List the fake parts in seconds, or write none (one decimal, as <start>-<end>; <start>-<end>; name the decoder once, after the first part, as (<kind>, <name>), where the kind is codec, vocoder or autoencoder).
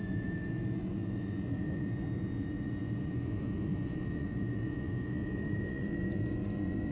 0.0-6.9 (vocoder, Vocos)